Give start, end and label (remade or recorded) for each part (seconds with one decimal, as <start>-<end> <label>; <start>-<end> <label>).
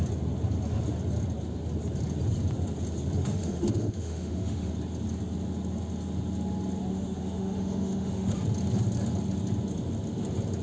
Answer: 0.0-3.2 recorded; 3.2-4.7 remade; 4.7-6.9 recorded; 6.9-8.3 remade; 8.3-10.6 recorded